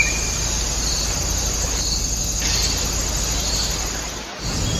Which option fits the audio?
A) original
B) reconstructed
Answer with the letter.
A